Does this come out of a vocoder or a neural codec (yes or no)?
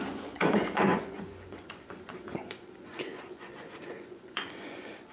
yes